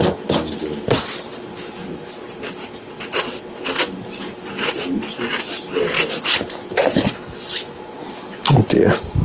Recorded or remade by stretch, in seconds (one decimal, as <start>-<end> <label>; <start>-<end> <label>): 0.0-9.2 recorded